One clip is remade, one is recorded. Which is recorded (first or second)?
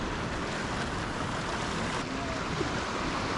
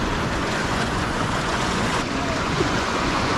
first